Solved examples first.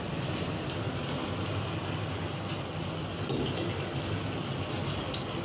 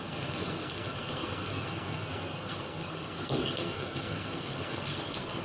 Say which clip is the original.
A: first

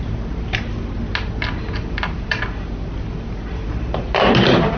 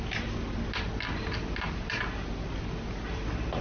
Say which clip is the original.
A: second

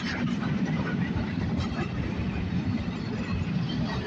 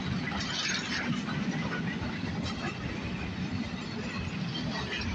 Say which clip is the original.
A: second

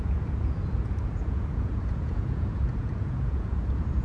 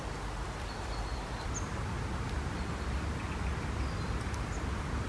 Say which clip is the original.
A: second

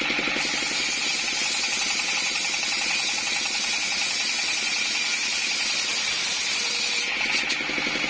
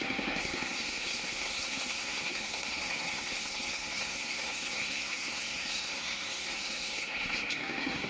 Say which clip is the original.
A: first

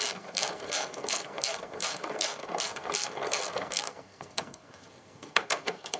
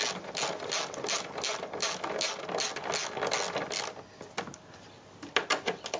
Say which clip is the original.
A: second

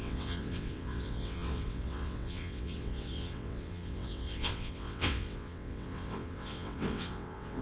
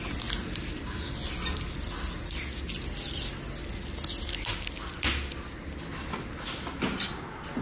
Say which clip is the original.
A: second